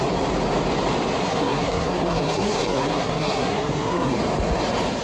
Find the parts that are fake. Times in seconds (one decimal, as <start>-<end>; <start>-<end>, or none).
1.2-4.2